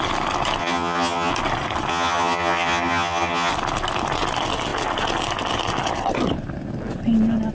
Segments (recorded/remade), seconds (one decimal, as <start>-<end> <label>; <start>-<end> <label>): 0.0-0.6 recorded; 0.6-1.3 remade; 1.3-1.9 recorded; 1.9-3.5 remade; 3.5-7.5 recorded